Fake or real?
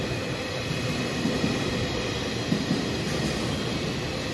real